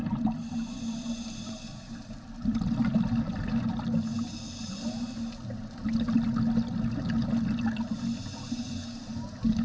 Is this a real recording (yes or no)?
yes